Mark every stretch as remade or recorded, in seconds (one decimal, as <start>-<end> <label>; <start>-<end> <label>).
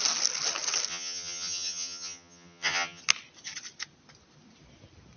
0.0-0.9 recorded; 0.9-3.0 remade; 3.0-5.2 recorded